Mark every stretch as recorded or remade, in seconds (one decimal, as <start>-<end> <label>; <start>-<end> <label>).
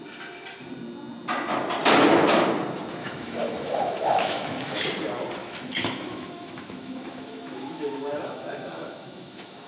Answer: 0.0-3.0 recorded; 3.0-4.8 remade; 4.8-5.4 recorded; 5.4-9.7 remade